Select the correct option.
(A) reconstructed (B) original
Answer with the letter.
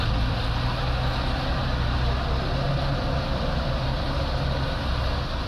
B